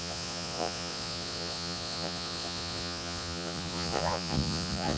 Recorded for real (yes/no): no